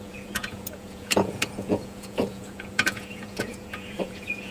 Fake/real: fake